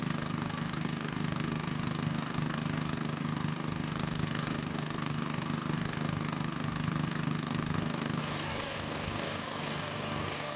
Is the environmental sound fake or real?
fake